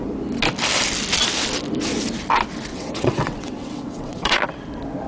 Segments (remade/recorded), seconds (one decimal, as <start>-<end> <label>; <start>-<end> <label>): 0.0-2.7 recorded; 2.7-4.4 remade; 4.4-5.1 recorded